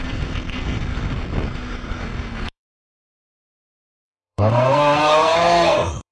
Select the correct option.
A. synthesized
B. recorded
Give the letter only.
A